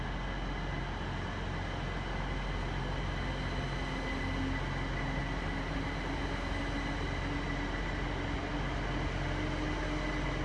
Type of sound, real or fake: real